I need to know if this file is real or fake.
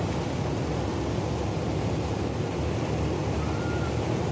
real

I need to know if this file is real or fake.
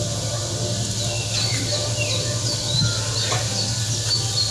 real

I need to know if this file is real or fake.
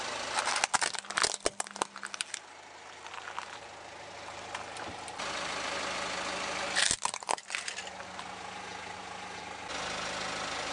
real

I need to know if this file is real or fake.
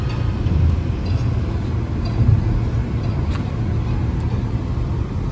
real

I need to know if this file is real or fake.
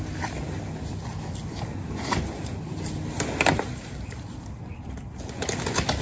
real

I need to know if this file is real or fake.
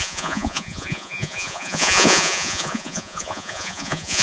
fake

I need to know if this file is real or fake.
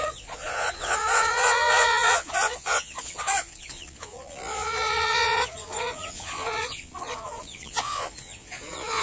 fake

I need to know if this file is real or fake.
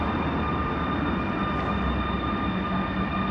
real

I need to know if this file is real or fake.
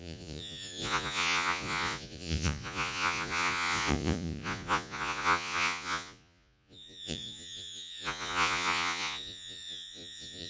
fake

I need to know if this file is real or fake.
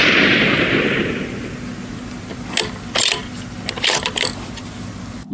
real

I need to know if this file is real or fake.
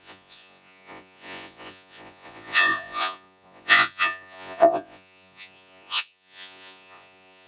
fake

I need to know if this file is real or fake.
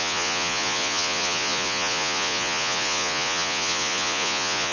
fake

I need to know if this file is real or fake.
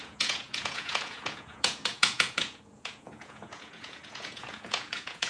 fake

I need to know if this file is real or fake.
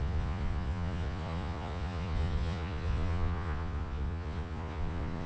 fake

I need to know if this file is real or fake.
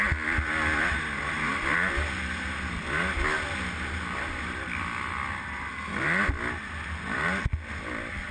real